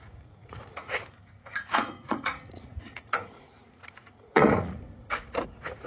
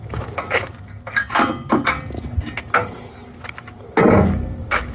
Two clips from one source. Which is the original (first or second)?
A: second